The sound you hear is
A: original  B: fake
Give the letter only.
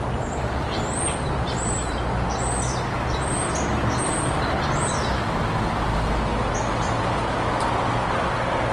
A